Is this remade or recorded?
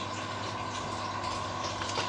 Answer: recorded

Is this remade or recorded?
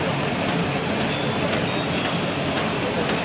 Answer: recorded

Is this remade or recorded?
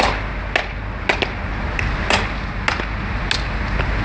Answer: recorded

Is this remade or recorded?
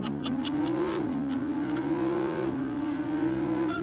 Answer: remade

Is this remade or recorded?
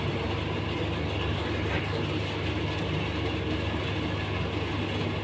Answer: recorded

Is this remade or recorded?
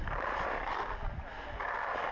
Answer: recorded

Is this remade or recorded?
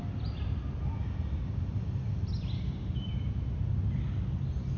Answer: recorded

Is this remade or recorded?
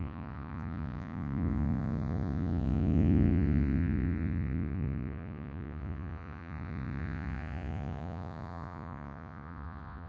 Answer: remade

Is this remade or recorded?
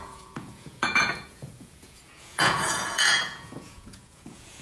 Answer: remade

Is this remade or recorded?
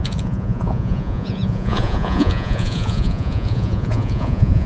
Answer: remade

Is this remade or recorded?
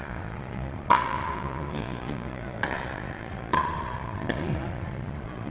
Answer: remade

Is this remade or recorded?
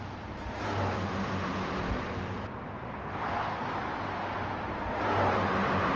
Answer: recorded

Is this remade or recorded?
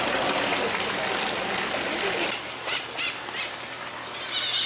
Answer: recorded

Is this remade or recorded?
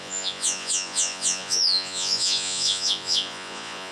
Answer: remade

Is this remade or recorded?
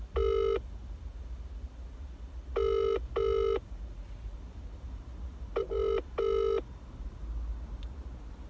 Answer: recorded